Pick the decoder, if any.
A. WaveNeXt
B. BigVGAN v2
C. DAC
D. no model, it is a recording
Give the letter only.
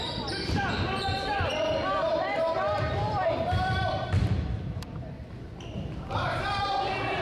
B